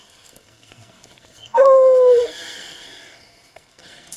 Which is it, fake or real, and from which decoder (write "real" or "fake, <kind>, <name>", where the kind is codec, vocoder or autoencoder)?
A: fake, codec, SNAC